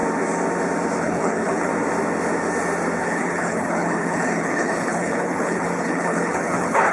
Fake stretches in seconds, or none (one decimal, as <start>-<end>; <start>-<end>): 1.0-1.7; 3.0-6.9